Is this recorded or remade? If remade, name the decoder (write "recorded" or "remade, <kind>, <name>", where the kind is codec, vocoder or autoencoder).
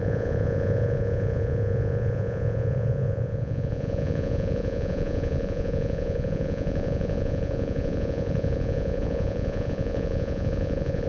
remade, vocoder, Vocos